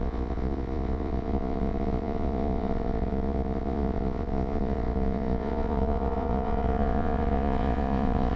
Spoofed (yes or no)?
yes